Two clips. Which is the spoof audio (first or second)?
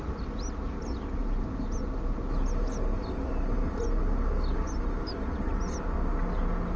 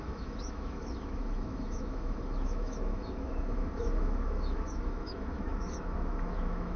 second